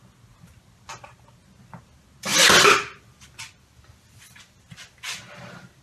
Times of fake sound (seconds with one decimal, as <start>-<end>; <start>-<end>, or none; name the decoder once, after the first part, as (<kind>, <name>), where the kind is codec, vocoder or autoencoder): 2.3-5.8 (vocoder, BigVGAN v2)